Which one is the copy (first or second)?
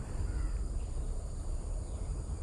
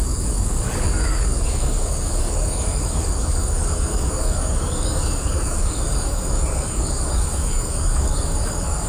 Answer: second